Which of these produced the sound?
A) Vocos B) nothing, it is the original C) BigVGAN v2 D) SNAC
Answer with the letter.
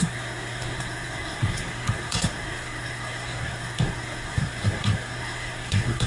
D